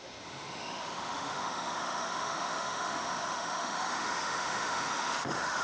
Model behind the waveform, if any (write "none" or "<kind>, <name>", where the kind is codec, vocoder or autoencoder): autoencoder, DAC-VAE